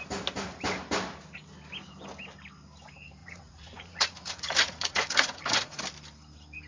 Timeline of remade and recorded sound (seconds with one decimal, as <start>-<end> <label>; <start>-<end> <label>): 0.0-3.2 recorded; 3.2-5.8 remade; 5.8-6.7 recorded